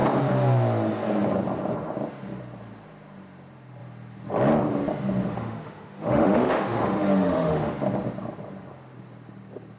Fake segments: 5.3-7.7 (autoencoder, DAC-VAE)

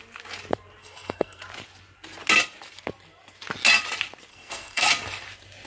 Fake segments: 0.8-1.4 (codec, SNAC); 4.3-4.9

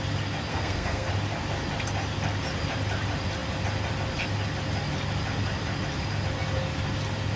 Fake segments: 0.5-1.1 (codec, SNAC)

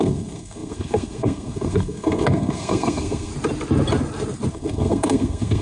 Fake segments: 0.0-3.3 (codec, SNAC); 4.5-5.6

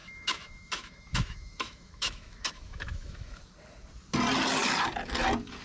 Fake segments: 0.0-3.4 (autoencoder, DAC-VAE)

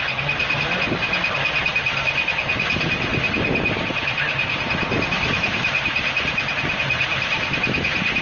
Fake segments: 3.1-8.2 (vocoder, BigVGAN v2)

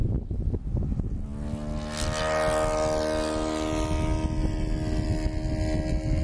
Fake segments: none

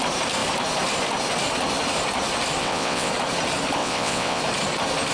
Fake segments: 2.6-3.1 (vocoder, WaveNeXt); 3.8-4.4